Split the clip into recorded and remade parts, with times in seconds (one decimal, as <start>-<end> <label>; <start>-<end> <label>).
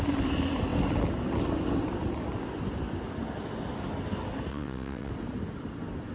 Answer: 0.0-4.5 recorded; 4.5-5.1 remade; 5.1-6.1 recorded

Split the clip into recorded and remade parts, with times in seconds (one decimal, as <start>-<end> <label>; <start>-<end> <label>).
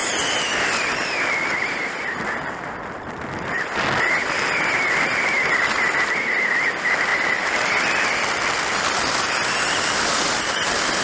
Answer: 0.0-11.0 recorded